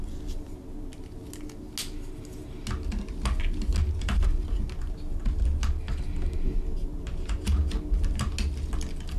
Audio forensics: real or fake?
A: real